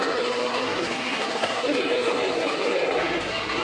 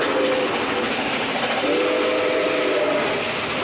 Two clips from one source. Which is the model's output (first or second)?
first